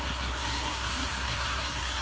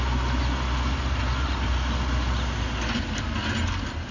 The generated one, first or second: first